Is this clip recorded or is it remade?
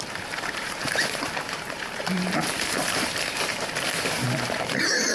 remade